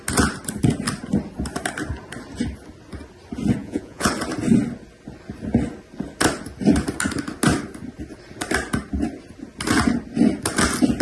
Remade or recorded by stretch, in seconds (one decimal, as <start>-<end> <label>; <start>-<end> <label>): 0.0-3.6 recorded; 3.6-4.1 remade; 4.1-11.0 recorded